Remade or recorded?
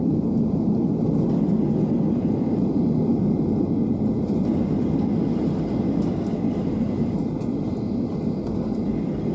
recorded